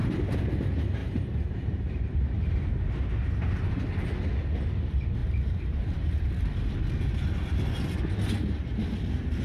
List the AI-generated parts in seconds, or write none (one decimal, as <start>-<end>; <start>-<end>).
1.0-3.1; 5.2-6.7